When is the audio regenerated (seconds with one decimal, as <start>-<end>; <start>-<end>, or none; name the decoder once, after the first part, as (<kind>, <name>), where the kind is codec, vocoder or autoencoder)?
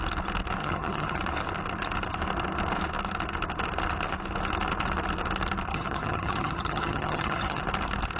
0.6-1.2 (vocoder, HiFi-GAN); 5.7-7.6